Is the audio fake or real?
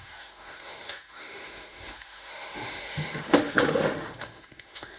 fake